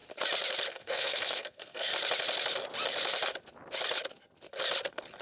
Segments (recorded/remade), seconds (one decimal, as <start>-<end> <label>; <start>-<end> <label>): 0.0-0.7 recorded; 0.7-1.9 remade; 1.9-5.2 recorded